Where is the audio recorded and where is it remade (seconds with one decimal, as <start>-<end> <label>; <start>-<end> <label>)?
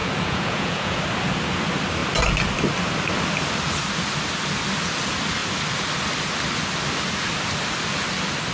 0.0-1.0 remade; 1.0-8.5 recorded